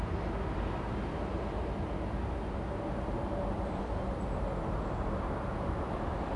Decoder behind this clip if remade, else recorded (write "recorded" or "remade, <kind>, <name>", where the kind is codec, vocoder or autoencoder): recorded